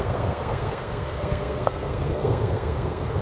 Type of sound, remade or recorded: remade